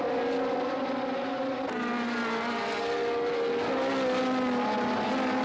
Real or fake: real